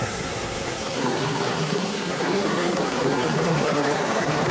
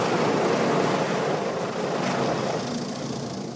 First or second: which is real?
second